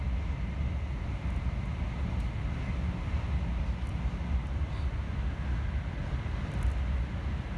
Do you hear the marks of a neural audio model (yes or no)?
no